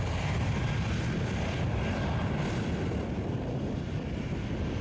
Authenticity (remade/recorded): recorded